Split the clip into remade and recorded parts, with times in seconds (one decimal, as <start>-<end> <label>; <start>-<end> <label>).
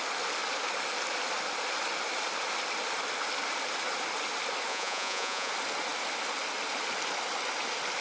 0.0-4.7 recorded; 4.7-5.5 remade; 5.5-8.0 recorded